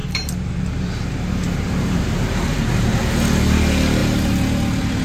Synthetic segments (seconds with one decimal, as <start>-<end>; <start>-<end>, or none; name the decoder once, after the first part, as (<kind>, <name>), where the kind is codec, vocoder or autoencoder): 0.0-3.0 (vocoder, BigVGAN v2); 4.0-5.0